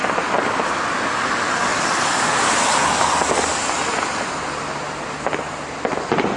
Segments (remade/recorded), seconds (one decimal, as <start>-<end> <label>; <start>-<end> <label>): 0.0-6.4 recorded